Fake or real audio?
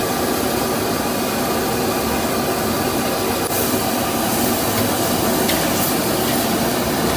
real